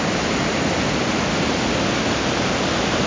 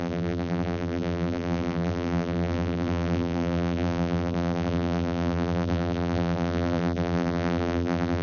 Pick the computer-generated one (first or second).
second